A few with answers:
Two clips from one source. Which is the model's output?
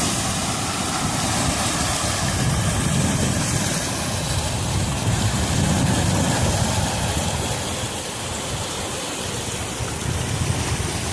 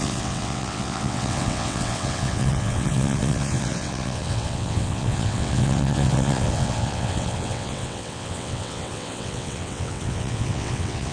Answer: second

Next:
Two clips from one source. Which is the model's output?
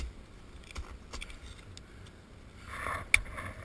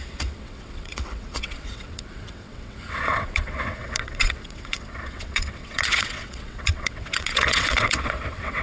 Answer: second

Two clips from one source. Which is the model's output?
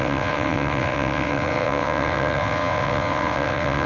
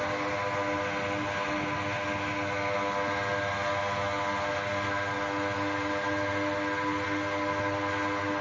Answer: first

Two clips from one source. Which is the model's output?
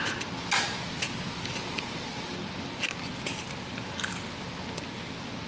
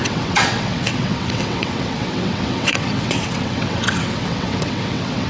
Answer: second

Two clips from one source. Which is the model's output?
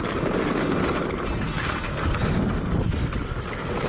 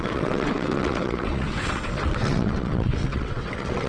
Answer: second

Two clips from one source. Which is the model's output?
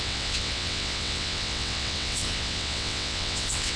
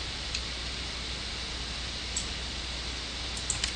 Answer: first